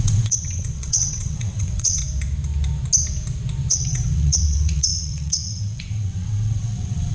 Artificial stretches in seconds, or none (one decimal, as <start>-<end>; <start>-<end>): 0.0-2.0; 3.7-7.1